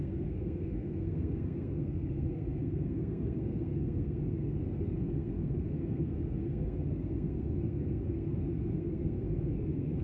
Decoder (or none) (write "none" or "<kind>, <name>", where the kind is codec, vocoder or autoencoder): codec, SNAC